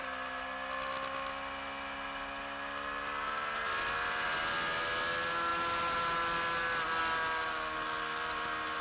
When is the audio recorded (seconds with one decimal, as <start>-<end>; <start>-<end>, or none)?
0.0-8.8

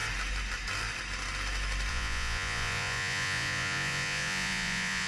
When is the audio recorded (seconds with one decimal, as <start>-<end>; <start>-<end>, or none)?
0.0-1.9

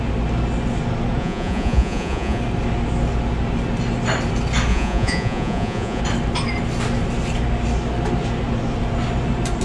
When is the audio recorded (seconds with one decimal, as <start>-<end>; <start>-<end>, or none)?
0.0-1.2; 2.4-4.7; 6.0-9.6

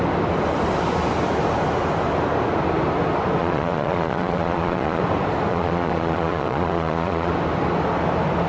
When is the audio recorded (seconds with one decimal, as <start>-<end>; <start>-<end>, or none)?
0.0-3.4; 5.0-5.5; 7.3-8.5